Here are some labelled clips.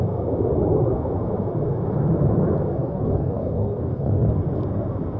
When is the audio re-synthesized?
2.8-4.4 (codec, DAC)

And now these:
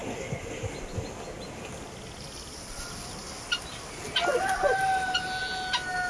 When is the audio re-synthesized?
none